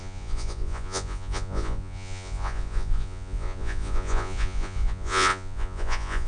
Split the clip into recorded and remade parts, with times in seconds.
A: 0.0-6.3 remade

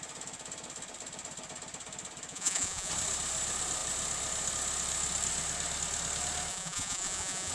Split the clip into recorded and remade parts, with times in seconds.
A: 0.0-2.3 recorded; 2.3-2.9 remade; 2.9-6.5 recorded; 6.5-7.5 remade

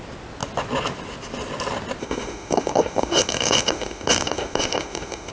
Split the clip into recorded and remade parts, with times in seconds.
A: 0.0-2.0 recorded; 2.0-5.3 remade